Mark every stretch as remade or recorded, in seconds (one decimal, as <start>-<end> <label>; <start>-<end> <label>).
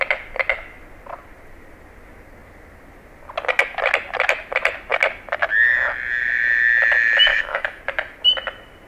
0.0-7.3 recorded; 7.3-7.8 remade; 7.8-8.9 recorded